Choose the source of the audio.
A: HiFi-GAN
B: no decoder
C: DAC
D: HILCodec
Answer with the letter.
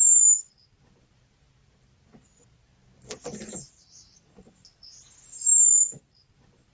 B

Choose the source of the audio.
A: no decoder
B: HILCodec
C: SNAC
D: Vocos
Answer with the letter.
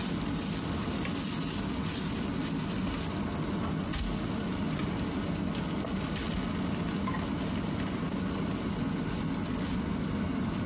A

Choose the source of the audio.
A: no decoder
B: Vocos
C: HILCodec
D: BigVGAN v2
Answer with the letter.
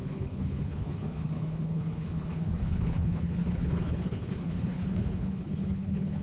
C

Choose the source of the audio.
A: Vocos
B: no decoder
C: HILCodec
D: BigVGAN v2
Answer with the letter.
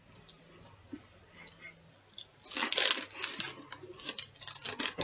B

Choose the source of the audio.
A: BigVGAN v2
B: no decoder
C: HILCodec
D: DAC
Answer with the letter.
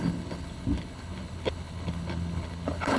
C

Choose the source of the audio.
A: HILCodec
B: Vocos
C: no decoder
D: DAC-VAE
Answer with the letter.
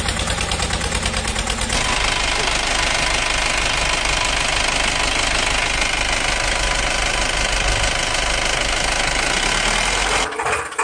C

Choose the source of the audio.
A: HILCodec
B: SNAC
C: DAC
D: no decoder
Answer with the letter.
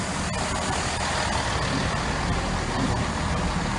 D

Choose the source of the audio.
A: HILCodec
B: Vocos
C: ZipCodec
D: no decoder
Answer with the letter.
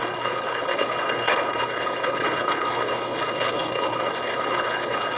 A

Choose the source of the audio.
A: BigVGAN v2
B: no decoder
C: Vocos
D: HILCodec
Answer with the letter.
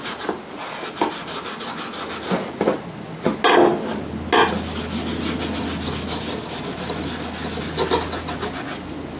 B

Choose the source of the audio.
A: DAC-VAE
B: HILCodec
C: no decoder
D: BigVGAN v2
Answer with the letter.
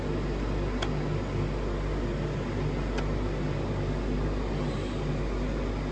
C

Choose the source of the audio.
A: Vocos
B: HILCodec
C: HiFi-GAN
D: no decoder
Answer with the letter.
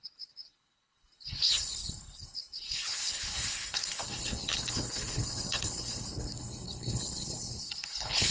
B